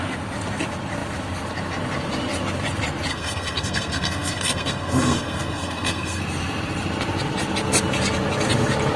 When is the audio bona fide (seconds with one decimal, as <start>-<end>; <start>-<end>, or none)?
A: 0.0-3.1; 6.2-9.0